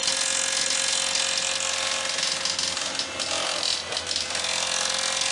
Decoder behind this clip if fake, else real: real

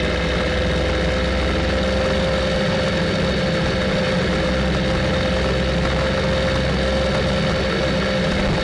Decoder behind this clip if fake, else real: real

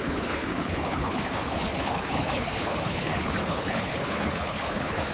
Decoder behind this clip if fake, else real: fake, codec, HILCodec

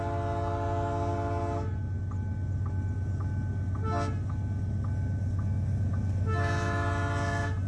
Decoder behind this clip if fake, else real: real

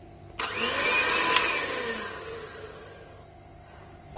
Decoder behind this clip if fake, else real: real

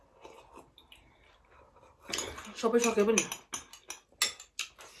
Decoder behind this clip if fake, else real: real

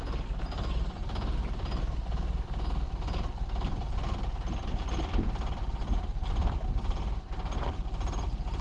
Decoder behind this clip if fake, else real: real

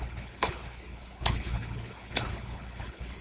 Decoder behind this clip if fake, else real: fake, codec, HILCodec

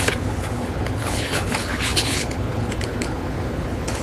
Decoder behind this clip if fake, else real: fake, codec, HILCodec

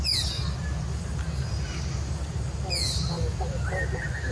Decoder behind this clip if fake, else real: real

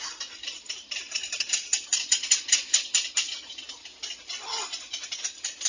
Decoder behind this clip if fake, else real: real